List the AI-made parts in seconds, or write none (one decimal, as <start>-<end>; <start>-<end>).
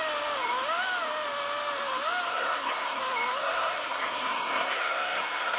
2.3-3.0; 3.4-5.6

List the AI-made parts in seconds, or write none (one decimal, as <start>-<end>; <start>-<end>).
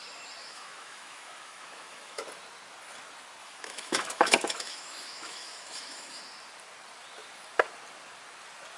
0.4-2.2; 3.4-6.2